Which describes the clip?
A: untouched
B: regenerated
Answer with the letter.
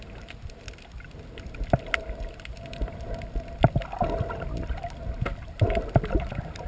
A